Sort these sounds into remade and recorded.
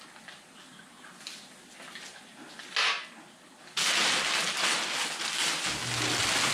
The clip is recorded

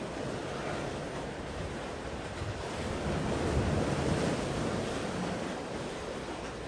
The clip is recorded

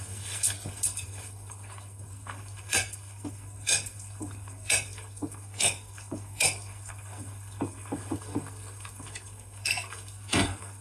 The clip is remade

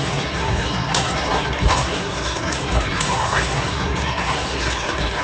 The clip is remade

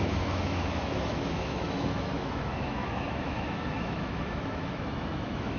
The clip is remade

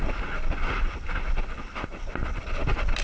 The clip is recorded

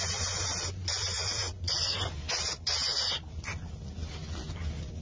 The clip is recorded